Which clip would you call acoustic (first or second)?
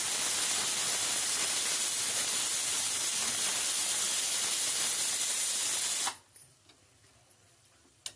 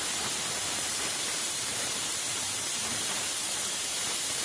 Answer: first